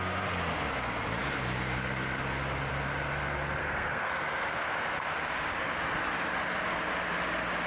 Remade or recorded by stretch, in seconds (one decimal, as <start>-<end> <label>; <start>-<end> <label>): 0.0-3.6 recorded; 3.6-4.1 remade; 4.1-7.7 recorded